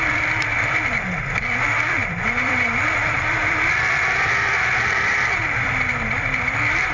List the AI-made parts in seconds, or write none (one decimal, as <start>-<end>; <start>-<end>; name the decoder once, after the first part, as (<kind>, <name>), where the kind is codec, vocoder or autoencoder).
0.0-6.9 (vocoder, BigVGAN v2)